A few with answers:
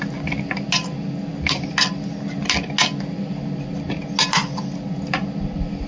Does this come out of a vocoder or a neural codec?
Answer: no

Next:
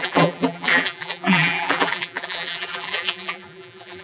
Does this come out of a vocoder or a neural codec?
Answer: yes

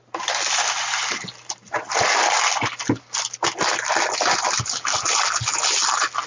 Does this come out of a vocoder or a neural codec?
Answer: no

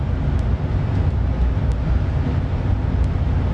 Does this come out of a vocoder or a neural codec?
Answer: no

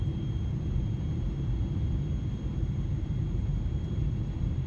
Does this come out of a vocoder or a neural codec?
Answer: yes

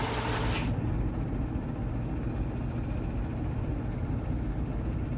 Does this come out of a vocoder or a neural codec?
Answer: no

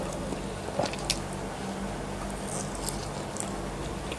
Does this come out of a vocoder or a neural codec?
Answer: no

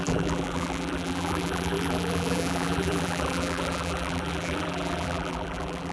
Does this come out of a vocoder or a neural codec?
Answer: yes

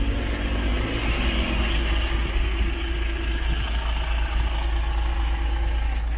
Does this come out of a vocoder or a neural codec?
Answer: no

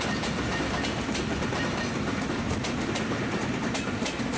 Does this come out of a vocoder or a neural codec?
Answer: no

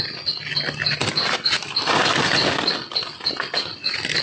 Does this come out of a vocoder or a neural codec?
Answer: no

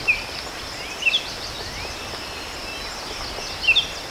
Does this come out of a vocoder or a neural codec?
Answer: no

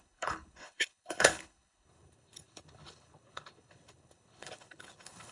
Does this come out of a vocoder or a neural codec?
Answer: yes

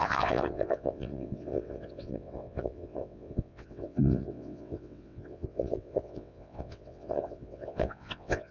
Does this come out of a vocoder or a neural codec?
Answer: yes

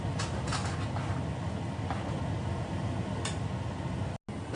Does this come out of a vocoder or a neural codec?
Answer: no